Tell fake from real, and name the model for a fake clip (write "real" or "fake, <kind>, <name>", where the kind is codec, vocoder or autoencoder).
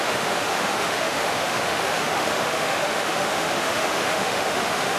fake, autoencoder, DAC-VAE